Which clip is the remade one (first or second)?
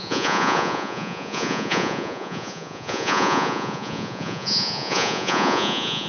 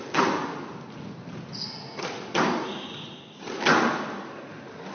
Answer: first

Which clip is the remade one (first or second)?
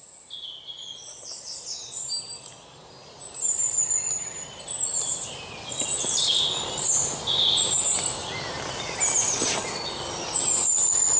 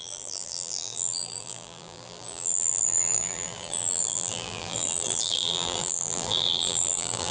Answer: second